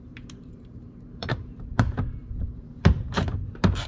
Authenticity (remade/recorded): remade